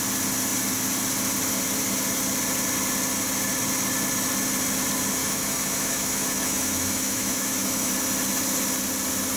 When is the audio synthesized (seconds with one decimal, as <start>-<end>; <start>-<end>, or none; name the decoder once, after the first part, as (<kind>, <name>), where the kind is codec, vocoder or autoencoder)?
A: 5.2-7.9 (autoencoder, DAC-VAE)